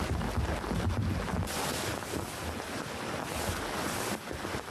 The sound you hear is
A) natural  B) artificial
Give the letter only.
A